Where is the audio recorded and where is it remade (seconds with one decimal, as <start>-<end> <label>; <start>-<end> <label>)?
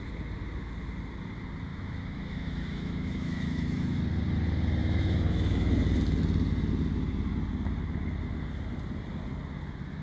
0.0-1.7 recorded; 1.7-4.0 remade; 4.0-4.8 recorded; 4.8-5.8 remade; 5.8-10.0 recorded